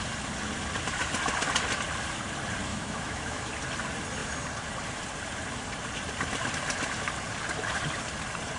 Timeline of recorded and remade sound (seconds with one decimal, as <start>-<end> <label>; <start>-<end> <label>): 0.0-2.7 recorded; 2.7-3.5 remade; 3.5-8.6 recorded